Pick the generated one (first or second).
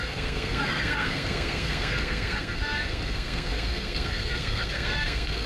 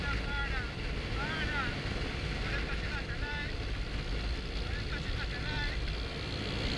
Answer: first